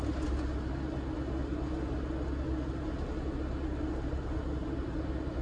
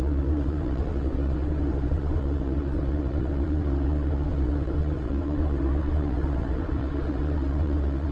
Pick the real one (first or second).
first